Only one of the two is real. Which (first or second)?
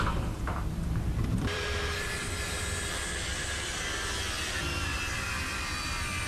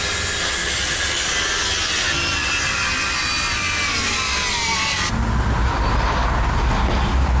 second